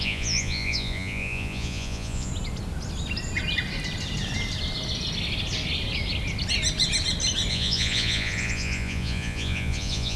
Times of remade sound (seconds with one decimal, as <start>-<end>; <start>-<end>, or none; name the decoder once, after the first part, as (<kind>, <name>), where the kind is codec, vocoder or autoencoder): 0.0-2.3 (vocoder, Vocos); 7.5-10.2